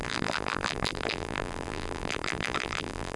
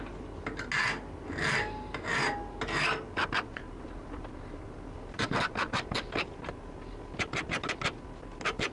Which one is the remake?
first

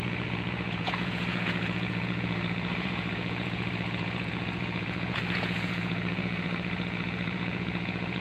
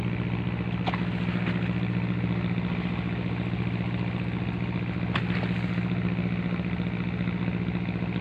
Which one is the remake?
first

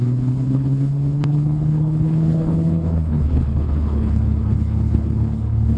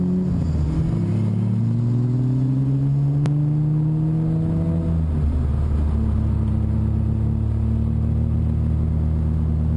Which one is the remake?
first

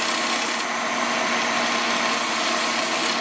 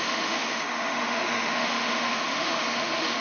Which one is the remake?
second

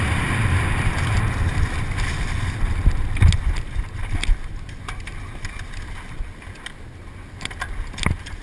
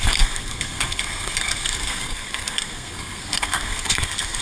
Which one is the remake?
second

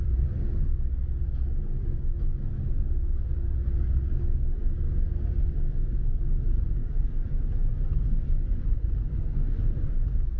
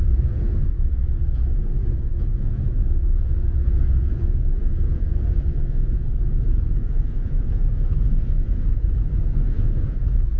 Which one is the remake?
second